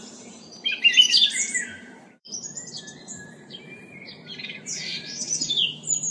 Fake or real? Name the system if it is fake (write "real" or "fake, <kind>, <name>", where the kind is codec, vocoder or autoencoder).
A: fake, vocoder, BigVGAN v2